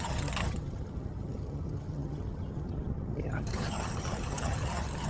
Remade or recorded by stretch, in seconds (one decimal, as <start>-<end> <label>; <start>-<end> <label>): 0.0-5.1 remade